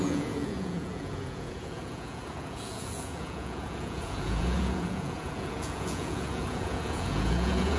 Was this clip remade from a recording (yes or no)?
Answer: yes